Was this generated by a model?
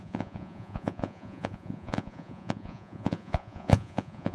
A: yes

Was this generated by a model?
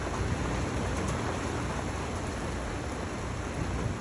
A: no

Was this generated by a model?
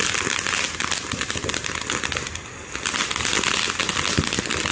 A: no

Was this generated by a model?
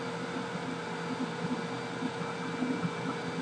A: no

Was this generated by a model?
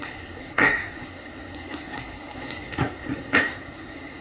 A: yes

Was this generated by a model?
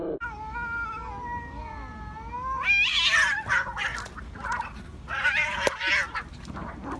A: no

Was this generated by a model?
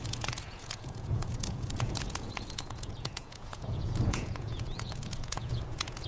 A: yes